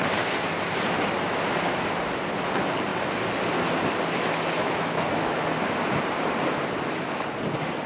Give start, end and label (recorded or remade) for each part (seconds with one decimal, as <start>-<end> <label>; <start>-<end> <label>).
0.0-4.6 recorded; 4.6-5.4 remade; 5.4-7.9 recorded